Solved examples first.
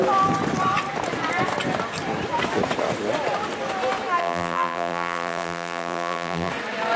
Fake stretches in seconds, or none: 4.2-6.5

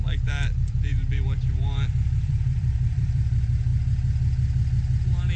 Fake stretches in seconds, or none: 0.0-3.7

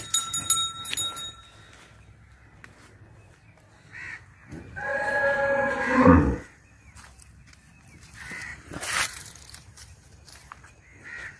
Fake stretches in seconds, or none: 4.9-5.7; 8.5-10.5

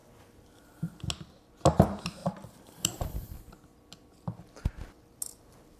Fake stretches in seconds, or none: 2.2-3.4

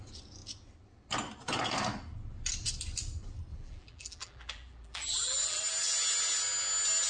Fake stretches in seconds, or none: 3.5-5.6

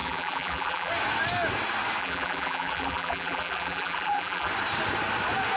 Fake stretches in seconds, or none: 0.0-0.9; 2.0-4.5

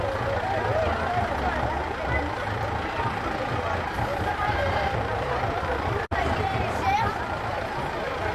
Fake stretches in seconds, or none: 4.1-7.1

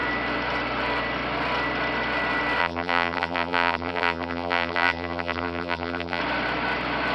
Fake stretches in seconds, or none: 2.6-6.2